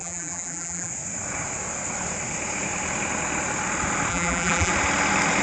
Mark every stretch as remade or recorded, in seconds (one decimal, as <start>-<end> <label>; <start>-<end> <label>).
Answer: 0.0-0.9 remade; 0.9-4.1 recorded; 4.1-4.7 remade; 4.7-5.4 recorded

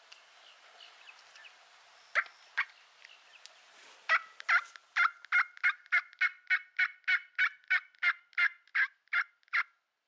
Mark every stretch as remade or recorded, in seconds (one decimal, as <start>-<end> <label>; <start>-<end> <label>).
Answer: 0.0-10.1 recorded

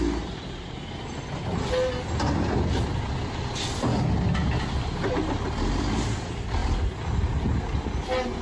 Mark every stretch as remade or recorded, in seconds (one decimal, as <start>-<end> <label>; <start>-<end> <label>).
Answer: 0.0-8.4 recorded